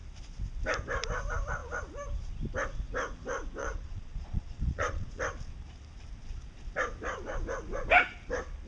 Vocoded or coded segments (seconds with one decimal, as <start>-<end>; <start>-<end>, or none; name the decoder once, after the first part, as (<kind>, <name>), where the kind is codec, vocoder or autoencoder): 3.6-5.2 (vocoder, Vocos)